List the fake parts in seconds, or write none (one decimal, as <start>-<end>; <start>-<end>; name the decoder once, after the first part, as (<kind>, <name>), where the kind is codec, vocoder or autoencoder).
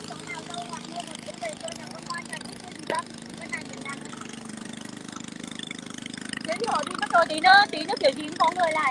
0.0-6.7 (vocoder, BigVGAN v2); 7.3-8.9